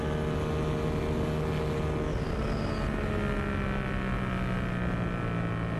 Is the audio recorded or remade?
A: recorded